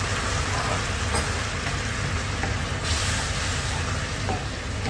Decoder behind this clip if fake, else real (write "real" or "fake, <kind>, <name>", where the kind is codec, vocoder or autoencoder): real